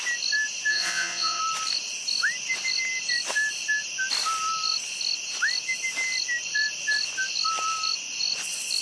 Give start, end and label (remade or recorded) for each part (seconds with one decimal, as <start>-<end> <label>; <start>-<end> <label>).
0.0-0.7 recorded; 0.7-1.4 remade; 1.4-8.8 recorded